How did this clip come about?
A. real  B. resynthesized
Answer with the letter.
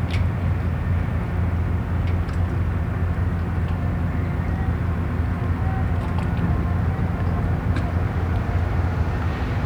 A